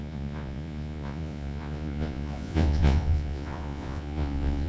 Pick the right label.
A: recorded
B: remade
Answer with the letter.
B